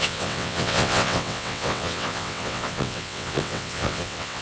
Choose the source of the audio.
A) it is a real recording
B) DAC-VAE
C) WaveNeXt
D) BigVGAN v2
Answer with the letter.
C